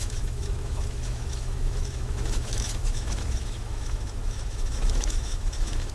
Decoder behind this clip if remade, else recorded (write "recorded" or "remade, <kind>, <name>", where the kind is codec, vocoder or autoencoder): remade, autoencoder, DAC-VAE